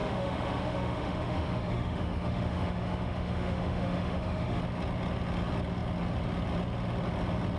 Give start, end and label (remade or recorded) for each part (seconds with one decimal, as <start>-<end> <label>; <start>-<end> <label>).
0.0-4.6 remade; 4.6-7.6 recorded